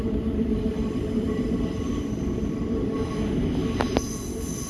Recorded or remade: recorded